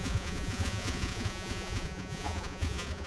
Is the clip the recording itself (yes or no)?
no